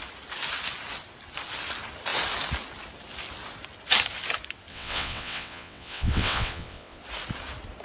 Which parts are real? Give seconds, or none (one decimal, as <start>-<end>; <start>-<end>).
0.0-4.7; 7.0-7.8